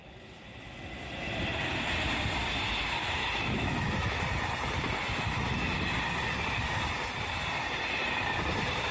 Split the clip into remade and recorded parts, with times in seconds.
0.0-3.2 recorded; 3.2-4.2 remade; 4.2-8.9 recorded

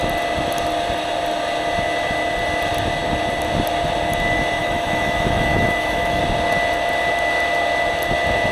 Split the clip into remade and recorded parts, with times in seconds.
0.0-4.6 recorded; 4.6-6.2 remade; 6.2-8.5 recorded

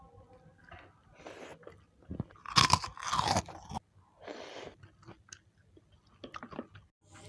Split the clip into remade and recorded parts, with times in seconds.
0.0-7.3 recorded

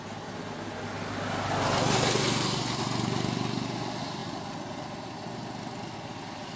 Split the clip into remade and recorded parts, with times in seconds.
0.0-6.6 recorded

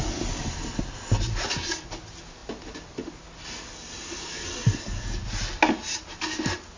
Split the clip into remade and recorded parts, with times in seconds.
0.0-6.8 recorded

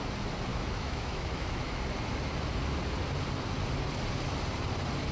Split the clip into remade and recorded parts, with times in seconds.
0.0-0.5 recorded; 0.5-1.8 remade; 1.8-5.1 recorded